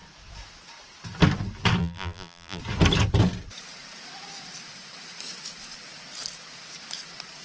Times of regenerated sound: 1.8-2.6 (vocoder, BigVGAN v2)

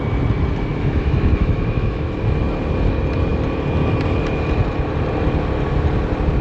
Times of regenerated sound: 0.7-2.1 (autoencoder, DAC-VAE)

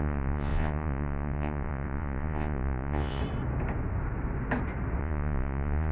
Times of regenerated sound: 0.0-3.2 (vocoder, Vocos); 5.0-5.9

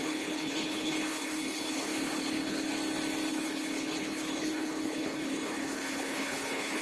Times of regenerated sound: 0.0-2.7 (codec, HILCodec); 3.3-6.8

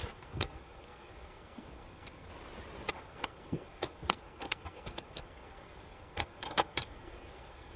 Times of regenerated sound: 0.0-2.3 (codec, SNAC); 2.9-7.8

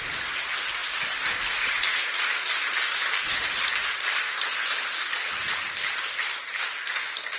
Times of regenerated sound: none

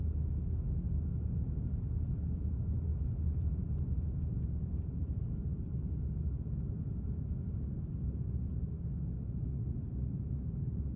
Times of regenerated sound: 2.9-3.7 (vocoder, BigVGAN v2); 5.0-8.5

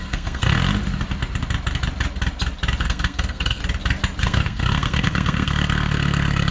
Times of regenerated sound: 0.0-0.6 (codec, SNAC); 2.8-3.6; 4.2-6.5